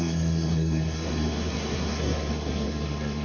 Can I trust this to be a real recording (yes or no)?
no